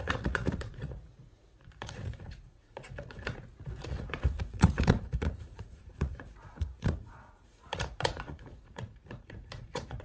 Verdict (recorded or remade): remade